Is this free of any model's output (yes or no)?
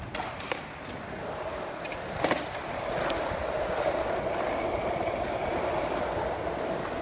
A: yes